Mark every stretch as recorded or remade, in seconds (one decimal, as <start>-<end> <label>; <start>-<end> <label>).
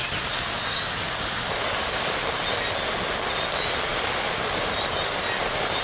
0.0-5.8 recorded